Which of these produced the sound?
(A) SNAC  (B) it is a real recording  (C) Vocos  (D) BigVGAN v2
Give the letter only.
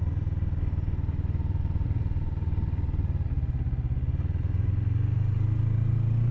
B